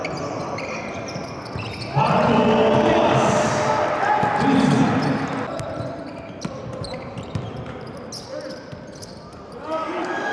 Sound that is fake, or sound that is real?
real